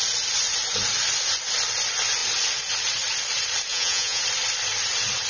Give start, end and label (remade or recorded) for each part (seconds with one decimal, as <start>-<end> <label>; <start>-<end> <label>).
0.0-3.7 recorded; 3.7-4.2 remade; 4.2-5.3 recorded